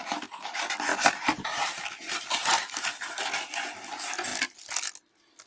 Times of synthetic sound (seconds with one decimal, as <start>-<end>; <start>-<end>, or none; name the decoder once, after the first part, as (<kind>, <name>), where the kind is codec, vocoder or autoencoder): 0.9-3.3 (vocoder, BigVGAN v2)